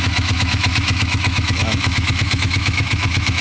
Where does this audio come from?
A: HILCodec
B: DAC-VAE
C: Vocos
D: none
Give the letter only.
B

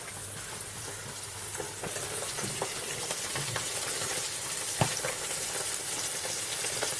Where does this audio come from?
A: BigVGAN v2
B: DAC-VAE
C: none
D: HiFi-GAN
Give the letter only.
A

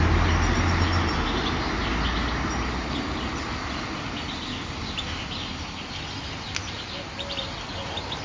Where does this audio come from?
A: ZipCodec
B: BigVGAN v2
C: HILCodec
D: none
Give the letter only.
D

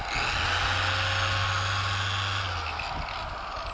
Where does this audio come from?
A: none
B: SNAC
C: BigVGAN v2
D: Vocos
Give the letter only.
A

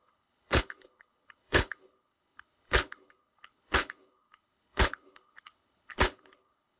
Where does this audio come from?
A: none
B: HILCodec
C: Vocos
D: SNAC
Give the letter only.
B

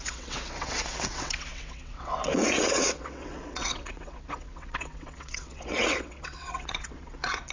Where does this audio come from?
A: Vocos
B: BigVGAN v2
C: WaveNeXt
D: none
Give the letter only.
C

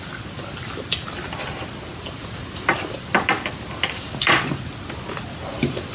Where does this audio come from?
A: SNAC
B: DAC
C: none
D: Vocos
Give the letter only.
C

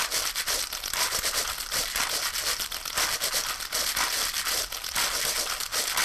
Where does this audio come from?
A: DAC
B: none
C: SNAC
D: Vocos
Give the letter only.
B